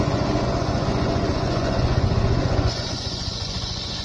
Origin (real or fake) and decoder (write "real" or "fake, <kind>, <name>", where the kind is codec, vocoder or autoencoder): fake, vocoder, Vocos